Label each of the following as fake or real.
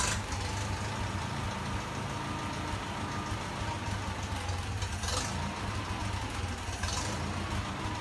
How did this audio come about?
real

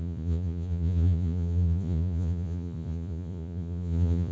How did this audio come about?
fake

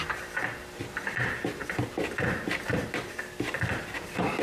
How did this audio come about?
fake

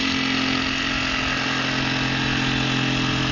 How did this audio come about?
real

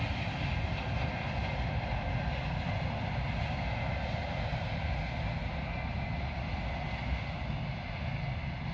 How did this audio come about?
real